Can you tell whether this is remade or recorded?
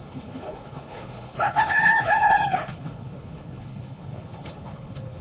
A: remade